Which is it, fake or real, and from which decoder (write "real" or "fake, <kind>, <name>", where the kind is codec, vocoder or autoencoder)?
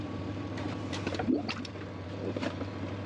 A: fake, vocoder, BigVGAN v2